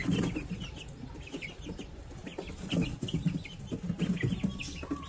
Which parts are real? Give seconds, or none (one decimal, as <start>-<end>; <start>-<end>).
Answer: 1.8-5.1